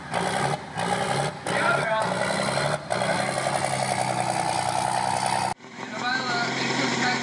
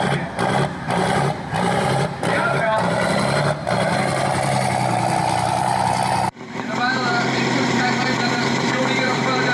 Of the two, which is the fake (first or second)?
second